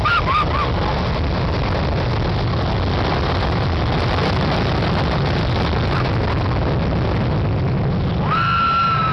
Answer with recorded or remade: recorded